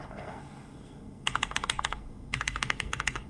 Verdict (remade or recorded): remade